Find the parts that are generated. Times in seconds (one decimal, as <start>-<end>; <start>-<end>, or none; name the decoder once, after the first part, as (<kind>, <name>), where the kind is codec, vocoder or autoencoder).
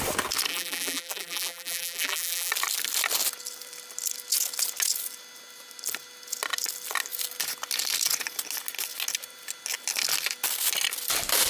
0.5-2.5 (vocoder, BigVGAN v2)